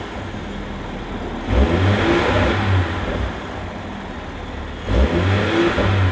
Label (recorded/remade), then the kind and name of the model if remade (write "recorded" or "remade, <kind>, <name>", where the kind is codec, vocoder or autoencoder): recorded